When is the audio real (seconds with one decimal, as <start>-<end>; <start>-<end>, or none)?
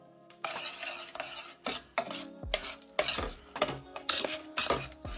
0.5-3.6; 4.4-5.2